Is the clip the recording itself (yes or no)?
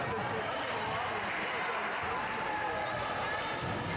yes